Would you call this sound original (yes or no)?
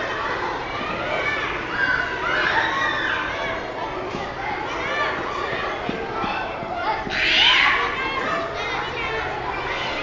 yes